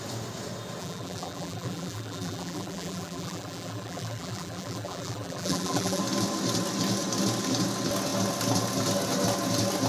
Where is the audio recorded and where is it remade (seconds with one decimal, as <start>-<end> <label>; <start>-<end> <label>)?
0.0-0.8 recorded; 0.8-6.0 remade; 6.0-9.9 recorded

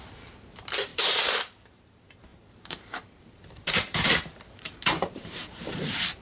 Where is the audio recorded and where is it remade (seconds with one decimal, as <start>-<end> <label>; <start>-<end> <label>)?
0.0-0.9 recorded; 0.9-1.9 remade; 1.9-2.3 recorded; 2.3-6.2 remade